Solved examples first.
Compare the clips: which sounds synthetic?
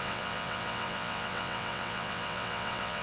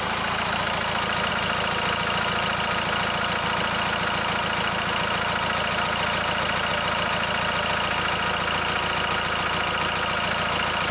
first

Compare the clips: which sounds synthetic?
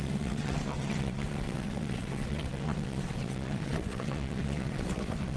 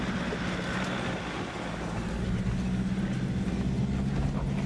first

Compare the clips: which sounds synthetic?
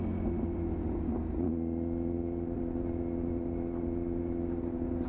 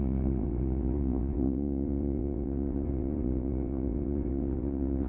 second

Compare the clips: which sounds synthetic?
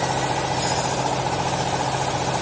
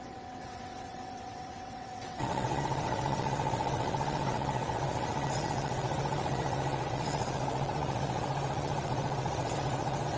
second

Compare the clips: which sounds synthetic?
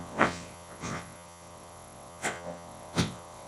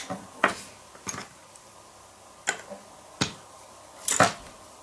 first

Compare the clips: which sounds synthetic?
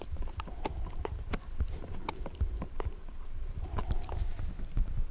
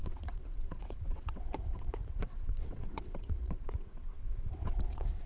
second